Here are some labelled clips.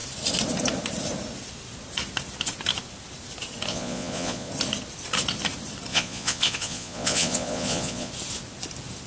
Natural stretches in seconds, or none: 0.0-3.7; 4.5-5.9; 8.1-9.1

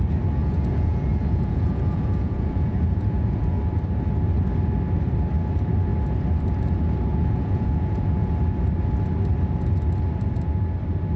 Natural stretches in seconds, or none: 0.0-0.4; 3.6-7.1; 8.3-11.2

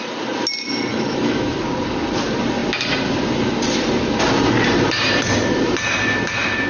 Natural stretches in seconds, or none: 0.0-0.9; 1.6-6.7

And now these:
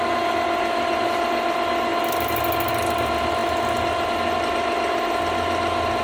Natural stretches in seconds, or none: 0.0-6.0

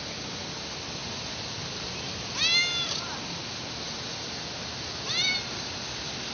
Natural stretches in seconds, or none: 0.0-6.3

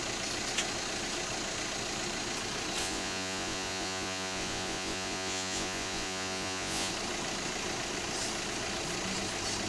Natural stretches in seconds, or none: 0.0-2.8; 6.9-9.7

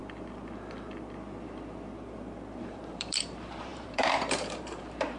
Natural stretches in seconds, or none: 0.0-2.6